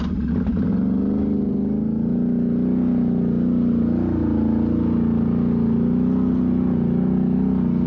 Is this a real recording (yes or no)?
yes